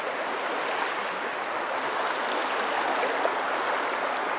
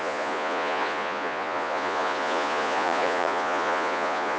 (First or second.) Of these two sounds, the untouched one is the first